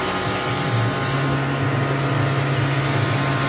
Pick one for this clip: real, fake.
real